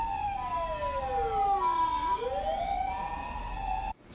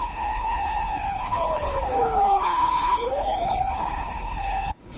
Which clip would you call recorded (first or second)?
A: first